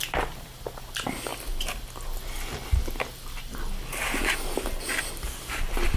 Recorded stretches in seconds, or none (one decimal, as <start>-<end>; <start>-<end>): 0.0-6.0